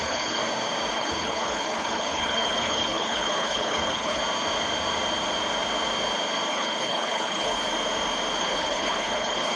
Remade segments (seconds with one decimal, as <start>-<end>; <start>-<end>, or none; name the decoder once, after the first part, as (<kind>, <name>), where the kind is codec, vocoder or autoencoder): 0.0-0.4 (codec, HILCodec); 0.9-4.2; 6.5-7.6; 8.4-9.6